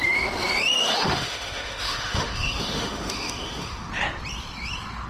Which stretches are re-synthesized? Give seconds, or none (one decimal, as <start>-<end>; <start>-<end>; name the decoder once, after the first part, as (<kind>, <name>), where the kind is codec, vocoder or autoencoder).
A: 0.8-3.9 (autoencoder, DAC-VAE)